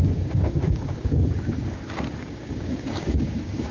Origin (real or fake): fake